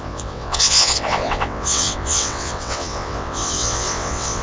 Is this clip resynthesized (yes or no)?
yes